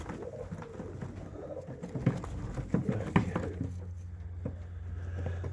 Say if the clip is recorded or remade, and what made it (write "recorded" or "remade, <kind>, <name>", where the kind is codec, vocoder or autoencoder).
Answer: recorded